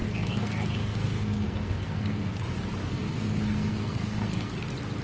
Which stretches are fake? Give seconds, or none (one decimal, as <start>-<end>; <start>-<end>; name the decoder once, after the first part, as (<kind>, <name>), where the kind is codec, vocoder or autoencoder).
0.0-2.2 (codec, SNAC); 2.8-4.5